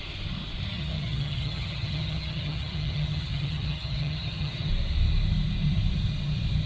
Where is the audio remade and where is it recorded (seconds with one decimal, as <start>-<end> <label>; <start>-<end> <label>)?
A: 0.0-0.7 recorded; 0.7-4.7 remade; 4.7-6.7 recorded